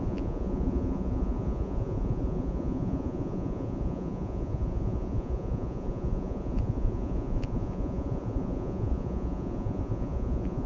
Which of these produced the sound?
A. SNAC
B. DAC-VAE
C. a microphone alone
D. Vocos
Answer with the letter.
D